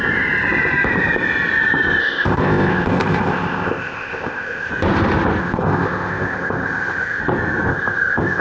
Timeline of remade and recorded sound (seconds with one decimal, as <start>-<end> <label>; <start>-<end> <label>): 0.0-2.0 recorded; 2.0-4.7 remade; 4.7-5.4 recorded; 5.4-7.2 remade; 7.2-7.7 recorded; 7.7-8.4 remade